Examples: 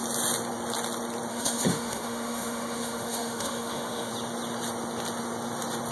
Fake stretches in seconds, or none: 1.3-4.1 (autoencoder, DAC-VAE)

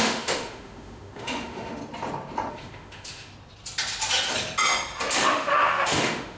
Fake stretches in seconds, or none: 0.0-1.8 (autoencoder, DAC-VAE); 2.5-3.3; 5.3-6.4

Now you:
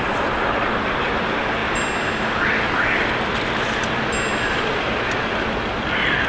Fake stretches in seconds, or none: none

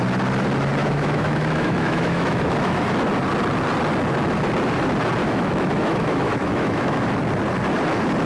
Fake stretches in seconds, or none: 0.8-2.8 (autoencoder, DAC-VAE); 5.2-7.1

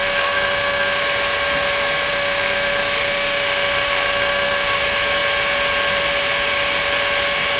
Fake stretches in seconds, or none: 0.0-1.0 (autoencoder, DAC-VAE); 2.1-4.8

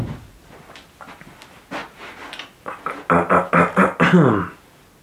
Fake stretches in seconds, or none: none

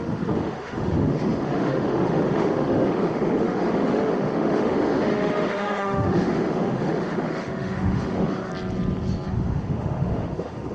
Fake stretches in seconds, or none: 0.0-8.5 (autoencoder, DAC-VAE); 9.3-10.7

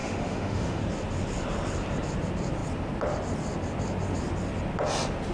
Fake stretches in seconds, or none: 0.0-0.8 (autoencoder, DAC-VAE)